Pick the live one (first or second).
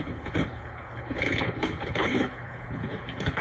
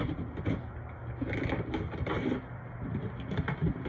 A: second